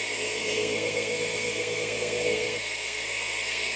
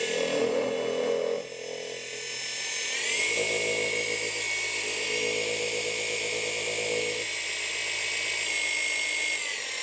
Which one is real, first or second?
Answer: second